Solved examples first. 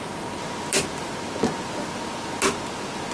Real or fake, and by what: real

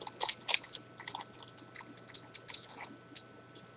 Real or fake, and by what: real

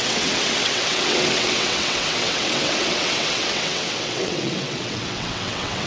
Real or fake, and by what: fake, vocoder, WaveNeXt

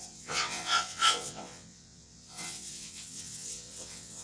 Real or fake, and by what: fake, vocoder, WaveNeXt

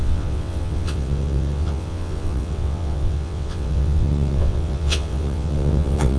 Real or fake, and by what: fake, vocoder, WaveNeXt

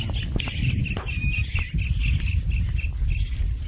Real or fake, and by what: real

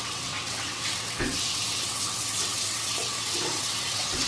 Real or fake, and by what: fake, vocoder, WaveNeXt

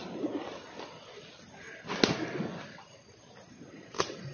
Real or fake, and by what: real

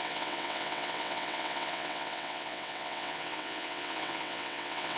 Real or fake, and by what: fake, vocoder, WaveNeXt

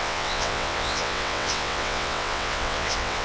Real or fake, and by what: fake, vocoder, WaveNeXt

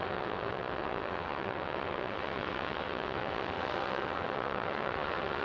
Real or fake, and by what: fake, vocoder, WaveNeXt